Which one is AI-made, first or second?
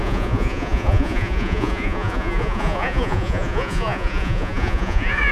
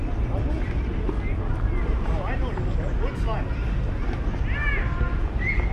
first